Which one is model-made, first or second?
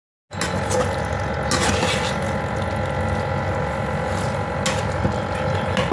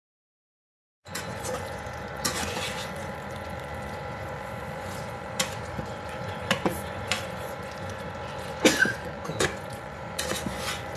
second